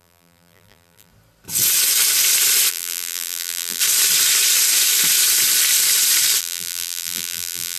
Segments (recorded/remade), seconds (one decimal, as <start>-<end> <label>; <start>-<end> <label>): 0.0-1.1 remade; 1.1-2.7 recorded; 2.7-3.8 remade; 3.8-6.4 recorded; 6.4-7.8 remade